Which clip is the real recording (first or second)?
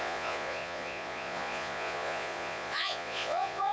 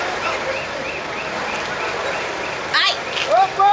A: second